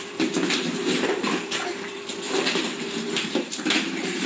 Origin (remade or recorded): remade